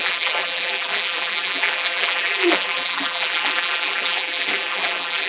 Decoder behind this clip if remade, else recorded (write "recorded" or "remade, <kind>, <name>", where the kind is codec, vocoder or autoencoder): remade, vocoder, BigVGAN v2